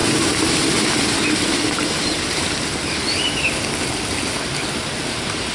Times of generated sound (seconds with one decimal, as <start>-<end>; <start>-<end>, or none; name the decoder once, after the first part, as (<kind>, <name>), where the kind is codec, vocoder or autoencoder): none